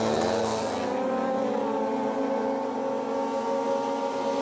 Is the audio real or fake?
real